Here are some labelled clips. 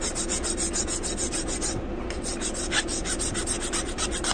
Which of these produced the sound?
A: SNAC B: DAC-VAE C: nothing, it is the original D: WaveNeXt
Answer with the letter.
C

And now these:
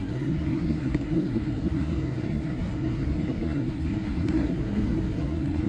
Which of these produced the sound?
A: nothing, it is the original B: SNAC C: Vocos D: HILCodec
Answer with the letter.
B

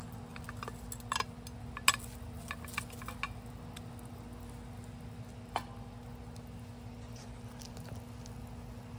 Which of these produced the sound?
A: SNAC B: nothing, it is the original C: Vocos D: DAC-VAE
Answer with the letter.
B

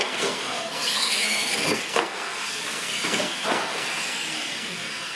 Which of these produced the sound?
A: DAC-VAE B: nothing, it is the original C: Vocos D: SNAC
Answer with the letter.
D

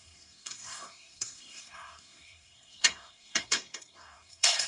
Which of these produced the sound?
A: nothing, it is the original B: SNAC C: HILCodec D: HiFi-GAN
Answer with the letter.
B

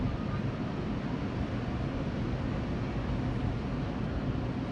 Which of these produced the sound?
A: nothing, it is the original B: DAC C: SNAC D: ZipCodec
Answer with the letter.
A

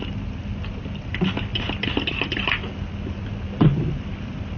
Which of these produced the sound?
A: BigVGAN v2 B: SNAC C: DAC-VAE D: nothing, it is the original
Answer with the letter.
D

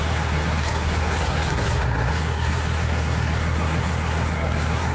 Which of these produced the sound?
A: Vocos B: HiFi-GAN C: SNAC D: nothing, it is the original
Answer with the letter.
C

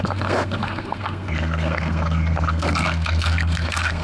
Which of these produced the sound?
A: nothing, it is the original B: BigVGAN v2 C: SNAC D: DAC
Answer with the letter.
C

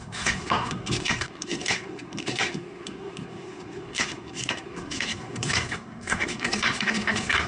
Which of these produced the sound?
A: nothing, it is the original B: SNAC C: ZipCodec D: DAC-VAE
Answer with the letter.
B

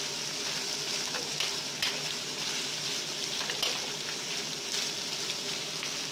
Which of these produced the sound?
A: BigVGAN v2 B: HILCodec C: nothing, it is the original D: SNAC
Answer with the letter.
C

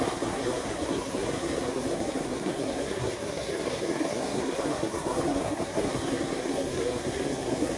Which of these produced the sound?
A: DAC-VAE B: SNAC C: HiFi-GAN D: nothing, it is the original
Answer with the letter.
B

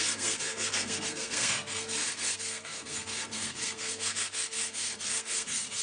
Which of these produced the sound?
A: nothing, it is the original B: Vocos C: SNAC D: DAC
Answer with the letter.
C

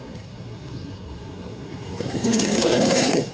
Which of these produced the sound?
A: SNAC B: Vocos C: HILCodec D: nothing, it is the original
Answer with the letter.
A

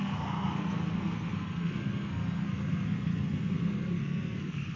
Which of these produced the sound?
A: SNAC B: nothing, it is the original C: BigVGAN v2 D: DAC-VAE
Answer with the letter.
A